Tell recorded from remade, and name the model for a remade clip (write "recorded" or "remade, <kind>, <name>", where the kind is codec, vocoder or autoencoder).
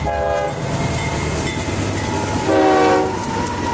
recorded